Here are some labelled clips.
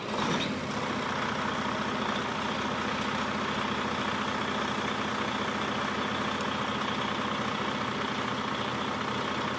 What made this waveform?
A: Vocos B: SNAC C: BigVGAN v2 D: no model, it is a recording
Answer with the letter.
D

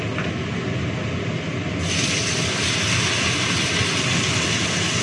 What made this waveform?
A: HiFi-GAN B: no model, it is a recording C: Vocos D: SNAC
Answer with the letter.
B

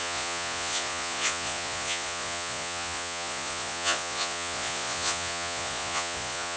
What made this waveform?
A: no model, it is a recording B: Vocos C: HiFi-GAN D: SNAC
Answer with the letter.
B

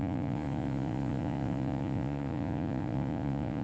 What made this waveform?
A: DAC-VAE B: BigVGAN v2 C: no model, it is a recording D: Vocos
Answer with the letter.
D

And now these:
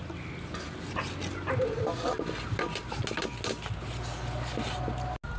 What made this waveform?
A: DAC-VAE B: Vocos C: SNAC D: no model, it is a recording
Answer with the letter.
D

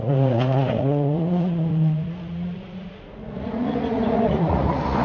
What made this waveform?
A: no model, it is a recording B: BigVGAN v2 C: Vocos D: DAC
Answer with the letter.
C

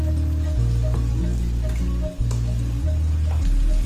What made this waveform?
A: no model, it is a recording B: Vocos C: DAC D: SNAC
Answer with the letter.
A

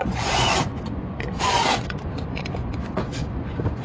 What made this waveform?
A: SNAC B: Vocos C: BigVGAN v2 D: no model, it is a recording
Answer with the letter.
B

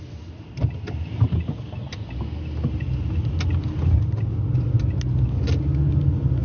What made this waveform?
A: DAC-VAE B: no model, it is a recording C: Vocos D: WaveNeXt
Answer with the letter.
B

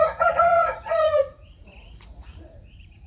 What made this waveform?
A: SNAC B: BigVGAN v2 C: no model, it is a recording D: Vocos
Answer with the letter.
D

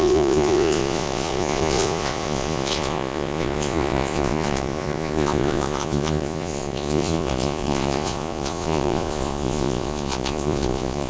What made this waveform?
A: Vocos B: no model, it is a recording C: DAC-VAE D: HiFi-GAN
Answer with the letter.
A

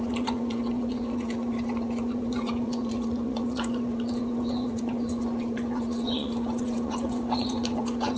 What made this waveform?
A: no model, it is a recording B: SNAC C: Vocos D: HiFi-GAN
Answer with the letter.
C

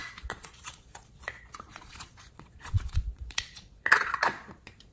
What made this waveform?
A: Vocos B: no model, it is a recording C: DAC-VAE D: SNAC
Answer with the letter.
A